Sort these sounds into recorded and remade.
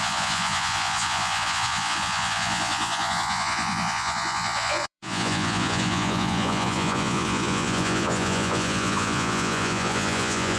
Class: remade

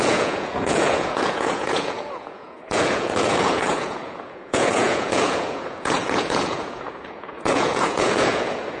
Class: remade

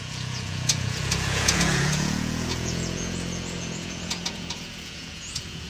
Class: remade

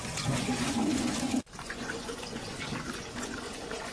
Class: remade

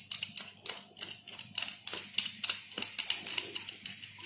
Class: recorded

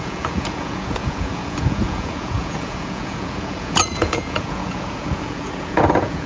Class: remade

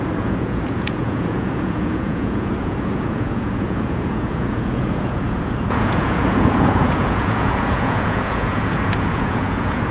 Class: remade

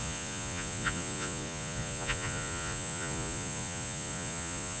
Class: remade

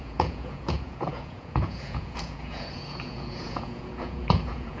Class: remade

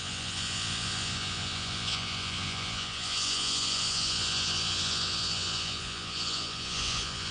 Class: remade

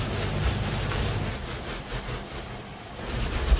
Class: recorded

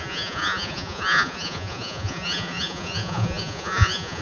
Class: remade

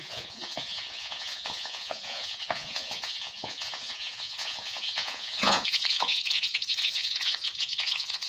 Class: remade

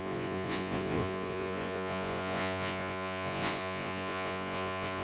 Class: remade